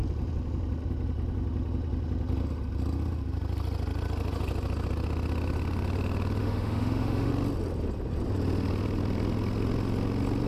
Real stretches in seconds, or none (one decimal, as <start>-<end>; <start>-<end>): 0.0-6.4; 7.3-10.5